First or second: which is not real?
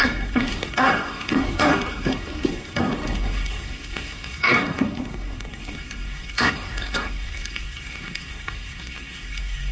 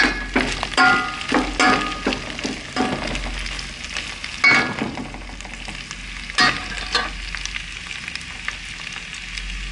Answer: first